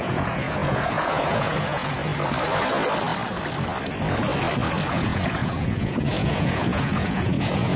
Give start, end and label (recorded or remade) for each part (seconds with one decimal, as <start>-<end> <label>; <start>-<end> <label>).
0.0-2.0 remade; 2.0-4.9 recorded; 4.9-7.8 remade